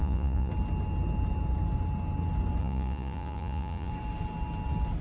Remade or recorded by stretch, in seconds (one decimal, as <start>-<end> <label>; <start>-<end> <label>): 0.0-0.5 remade; 0.5-2.6 recorded; 2.6-3.9 remade; 3.9-5.0 recorded